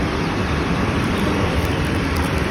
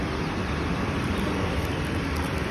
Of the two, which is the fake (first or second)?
first